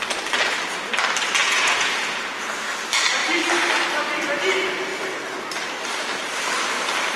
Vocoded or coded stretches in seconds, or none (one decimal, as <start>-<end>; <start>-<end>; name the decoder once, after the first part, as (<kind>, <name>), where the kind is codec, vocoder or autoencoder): 1.4-2.5 (vocoder, Vocos)

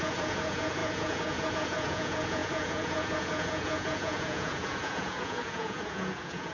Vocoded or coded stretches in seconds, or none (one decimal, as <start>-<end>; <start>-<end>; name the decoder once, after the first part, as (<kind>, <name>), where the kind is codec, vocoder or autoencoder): 0.0-6.5 (vocoder, Vocos)

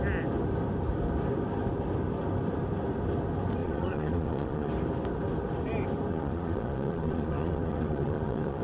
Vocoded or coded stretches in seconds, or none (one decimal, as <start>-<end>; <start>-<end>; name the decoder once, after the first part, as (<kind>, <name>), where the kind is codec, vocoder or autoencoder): 3.6-4.7 (vocoder, Vocos); 6.1-8.6

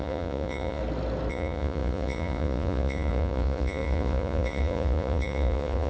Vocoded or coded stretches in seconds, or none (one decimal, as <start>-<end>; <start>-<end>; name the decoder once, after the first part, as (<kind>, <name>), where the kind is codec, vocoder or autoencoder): 0.0-0.8 (vocoder, Vocos); 1.3-5.9